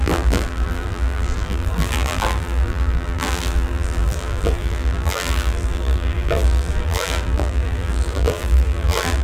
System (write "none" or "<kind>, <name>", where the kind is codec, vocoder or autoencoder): vocoder, BigVGAN v2